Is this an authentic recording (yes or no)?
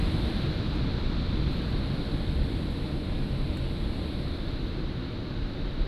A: yes